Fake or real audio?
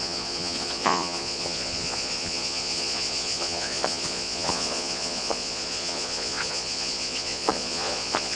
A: fake